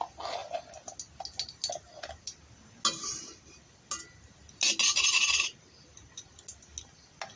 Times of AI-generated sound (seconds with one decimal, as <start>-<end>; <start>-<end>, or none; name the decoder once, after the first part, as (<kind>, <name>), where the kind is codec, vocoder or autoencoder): none